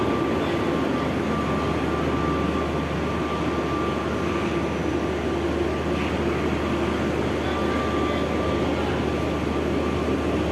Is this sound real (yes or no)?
yes